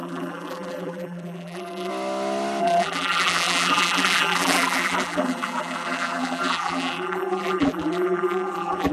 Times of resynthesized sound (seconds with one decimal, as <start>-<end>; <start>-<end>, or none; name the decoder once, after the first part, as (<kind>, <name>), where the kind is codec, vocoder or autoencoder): 0.0-1.9 (vocoder, BigVGAN v2); 2.6-8.9